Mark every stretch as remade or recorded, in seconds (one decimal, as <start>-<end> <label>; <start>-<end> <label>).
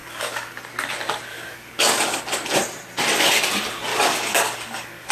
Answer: 0.0-0.6 remade; 0.6-1.3 recorded; 1.3-2.2 remade; 2.2-3.9 recorded; 3.9-5.1 remade